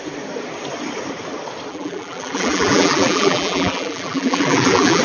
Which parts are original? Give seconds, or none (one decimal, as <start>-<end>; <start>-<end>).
0.0-1.7